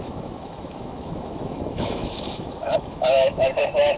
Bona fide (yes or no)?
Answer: no